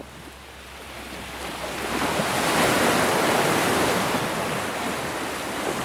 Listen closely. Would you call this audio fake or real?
real